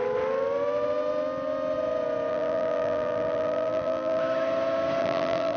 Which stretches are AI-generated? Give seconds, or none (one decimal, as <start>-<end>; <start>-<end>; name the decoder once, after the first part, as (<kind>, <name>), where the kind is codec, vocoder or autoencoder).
2.3-4.2 (vocoder, BigVGAN v2); 5.0-5.6